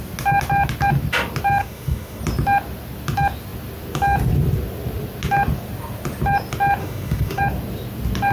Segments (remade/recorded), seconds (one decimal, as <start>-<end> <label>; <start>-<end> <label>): 0.0-1.6 recorded; 1.6-2.2 remade; 2.2-6.8 recorded; 6.8-7.4 remade; 7.4-8.3 recorded